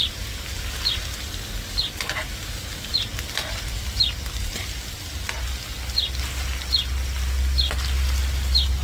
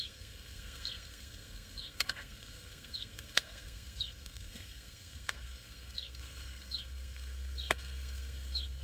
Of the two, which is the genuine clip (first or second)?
first